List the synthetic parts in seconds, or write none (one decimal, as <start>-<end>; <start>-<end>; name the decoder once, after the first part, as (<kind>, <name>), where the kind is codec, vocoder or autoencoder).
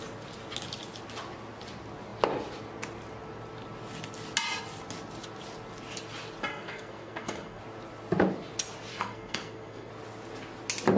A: 6.5-7.6 (codec, SNAC); 8.9-9.9